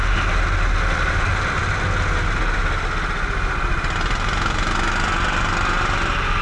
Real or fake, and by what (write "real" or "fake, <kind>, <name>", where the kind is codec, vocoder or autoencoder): real